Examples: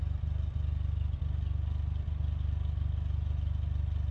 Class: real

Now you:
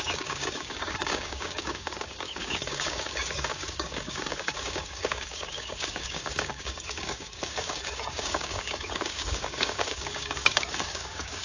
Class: fake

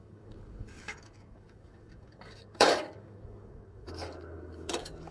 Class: fake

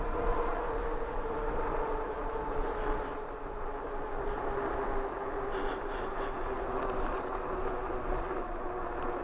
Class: real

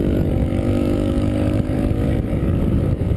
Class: fake